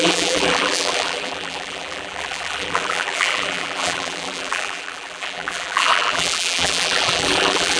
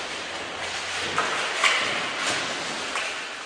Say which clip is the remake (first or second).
first